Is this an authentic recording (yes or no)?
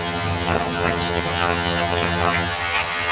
no